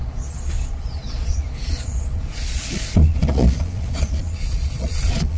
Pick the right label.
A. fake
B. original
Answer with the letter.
A